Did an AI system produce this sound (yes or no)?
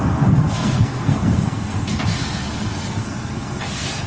yes